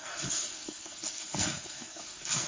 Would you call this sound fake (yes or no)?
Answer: yes